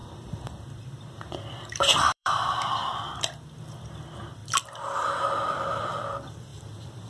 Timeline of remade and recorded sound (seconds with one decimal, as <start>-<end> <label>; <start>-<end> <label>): 0.0-4.0 remade; 4.0-6.5 recorded; 6.5-7.1 remade